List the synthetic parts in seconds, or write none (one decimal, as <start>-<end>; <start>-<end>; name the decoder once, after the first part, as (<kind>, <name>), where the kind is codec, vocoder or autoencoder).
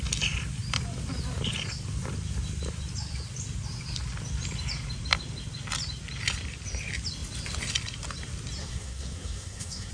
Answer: 8.6-9.9 (codec, SNAC)